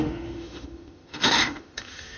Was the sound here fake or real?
fake